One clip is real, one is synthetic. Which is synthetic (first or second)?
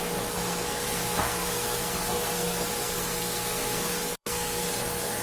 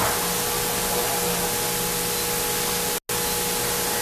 first